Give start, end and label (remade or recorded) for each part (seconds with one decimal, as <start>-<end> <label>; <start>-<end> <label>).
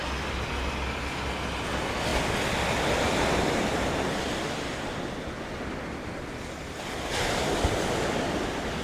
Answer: 0.0-8.8 recorded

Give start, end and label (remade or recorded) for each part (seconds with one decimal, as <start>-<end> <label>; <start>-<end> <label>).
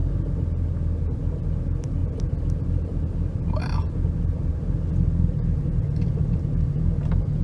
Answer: 0.0-7.4 recorded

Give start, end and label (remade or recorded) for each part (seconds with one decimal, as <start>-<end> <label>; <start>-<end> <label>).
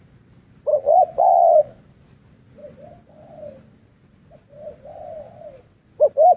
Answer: 0.0-0.7 recorded; 0.7-1.8 remade; 1.8-6.4 recorded